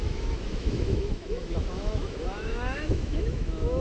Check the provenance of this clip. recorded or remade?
remade